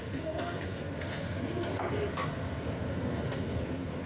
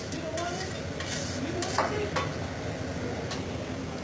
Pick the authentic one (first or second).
second